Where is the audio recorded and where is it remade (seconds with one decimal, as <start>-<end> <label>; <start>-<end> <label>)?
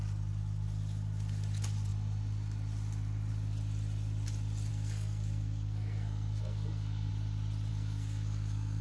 0.0-4.7 recorded; 4.7-7.1 remade; 7.1-7.7 recorded; 7.7-8.8 remade